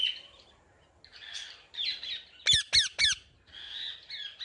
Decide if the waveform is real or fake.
real